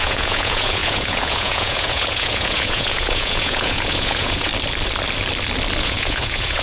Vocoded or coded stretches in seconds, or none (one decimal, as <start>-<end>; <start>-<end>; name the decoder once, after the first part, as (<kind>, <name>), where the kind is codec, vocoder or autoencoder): 0.0-4.5 (vocoder, Vocos); 5.8-6.6